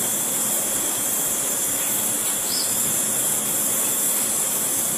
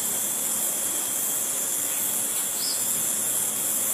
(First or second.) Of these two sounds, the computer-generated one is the first